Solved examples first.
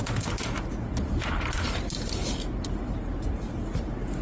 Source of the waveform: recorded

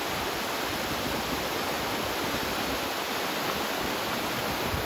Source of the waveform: recorded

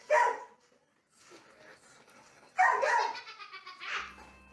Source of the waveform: recorded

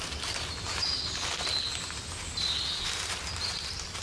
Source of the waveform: recorded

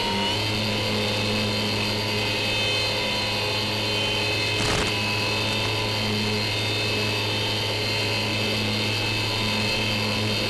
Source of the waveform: recorded